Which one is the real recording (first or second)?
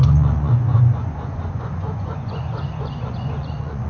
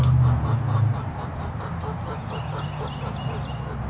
second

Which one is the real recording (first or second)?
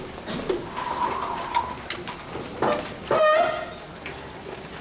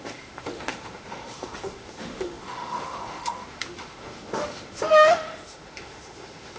first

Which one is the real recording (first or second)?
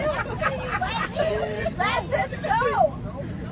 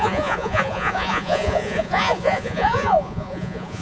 first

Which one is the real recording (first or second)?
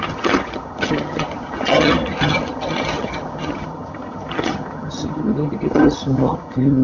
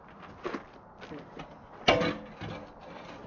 second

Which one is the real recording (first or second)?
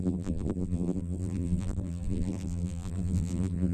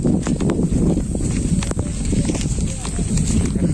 second